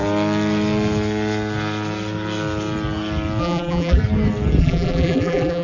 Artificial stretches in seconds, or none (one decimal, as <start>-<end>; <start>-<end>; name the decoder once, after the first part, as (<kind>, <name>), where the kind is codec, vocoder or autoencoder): 3.4-4.0 (vocoder, BigVGAN v2); 4.6-5.6